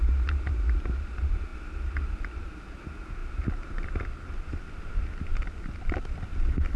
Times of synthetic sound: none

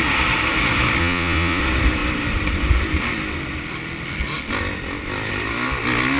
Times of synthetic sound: 1.0-1.6 (vocoder, Vocos)

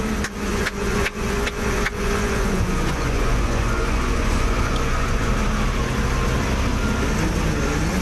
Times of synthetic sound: 0.5-5.3 (vocoder, Vocos)

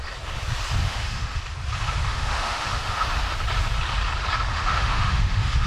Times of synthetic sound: 0.8-1.4 (autoencoder, DAC-VAE); 2.1-3.3; 4.5-5.7

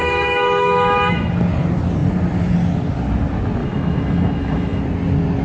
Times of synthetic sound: 0.0-1.3 (autoencoder, DAC-VAE); 3.6-4.8